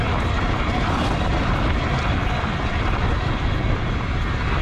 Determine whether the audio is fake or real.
real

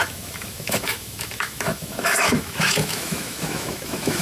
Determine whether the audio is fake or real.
fake